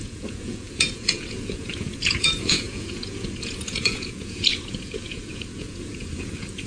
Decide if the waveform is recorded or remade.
remade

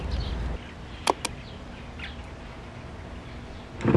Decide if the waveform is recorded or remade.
recorded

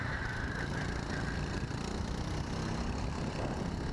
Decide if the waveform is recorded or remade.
recorded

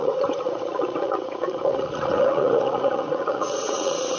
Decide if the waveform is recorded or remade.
remade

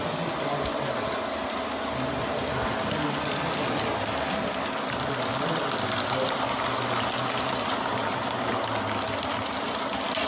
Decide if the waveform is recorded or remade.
recorded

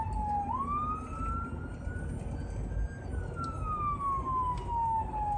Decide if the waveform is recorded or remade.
recorded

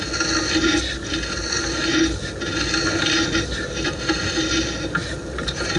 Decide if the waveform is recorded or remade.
recorded